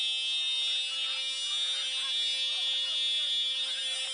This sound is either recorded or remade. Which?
recorded